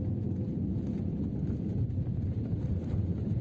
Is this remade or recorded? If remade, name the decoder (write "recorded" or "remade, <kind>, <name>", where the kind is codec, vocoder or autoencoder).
recorded